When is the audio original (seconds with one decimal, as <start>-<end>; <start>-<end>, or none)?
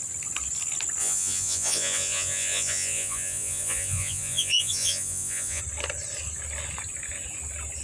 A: 0.0-1.0; 5.6-7.8